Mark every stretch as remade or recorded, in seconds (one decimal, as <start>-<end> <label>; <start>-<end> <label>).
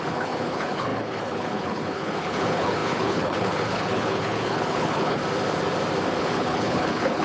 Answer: 0.0-5.2 remade; 5.2-6.2 recorded; 6.2-7.2 remade